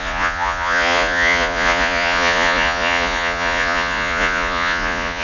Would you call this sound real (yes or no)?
no